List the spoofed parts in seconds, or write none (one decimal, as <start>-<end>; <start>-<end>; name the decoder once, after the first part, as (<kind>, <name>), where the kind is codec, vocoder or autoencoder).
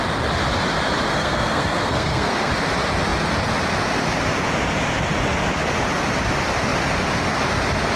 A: 1.1-2.5 (codec, SNAC)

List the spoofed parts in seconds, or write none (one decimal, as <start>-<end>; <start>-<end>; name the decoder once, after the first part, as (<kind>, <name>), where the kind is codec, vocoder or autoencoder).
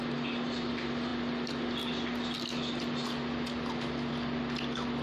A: none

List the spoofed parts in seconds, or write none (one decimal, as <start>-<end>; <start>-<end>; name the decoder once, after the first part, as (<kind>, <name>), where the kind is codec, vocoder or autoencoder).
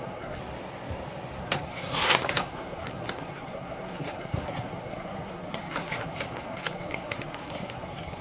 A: 0.0-0.4 (codec, SNAC); 1.4-8.2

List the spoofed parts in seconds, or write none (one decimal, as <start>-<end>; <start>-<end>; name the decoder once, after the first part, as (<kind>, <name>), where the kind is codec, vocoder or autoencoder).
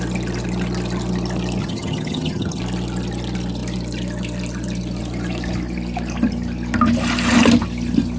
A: 1.6-2.6 (vocoder, HiFi-GAN)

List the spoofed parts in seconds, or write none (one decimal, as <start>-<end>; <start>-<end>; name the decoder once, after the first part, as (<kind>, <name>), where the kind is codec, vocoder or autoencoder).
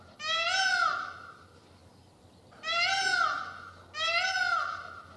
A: none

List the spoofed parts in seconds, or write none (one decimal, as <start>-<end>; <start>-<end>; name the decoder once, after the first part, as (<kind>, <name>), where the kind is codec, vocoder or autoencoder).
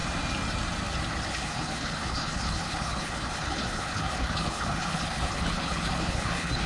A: 1.3-6.7 (codec, HILCodec)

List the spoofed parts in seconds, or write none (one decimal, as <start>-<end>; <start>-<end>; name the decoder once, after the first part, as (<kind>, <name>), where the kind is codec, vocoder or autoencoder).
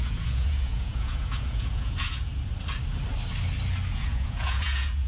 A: 0.0-2.3 (vocoder, Vocos); 3.9-5.1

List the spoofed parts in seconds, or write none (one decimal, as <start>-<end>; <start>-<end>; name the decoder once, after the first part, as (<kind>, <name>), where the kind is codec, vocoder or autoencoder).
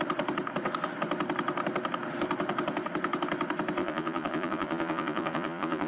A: 3.8-5.9 (vocoder, Vocos)